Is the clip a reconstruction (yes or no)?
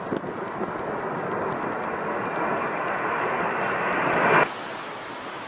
no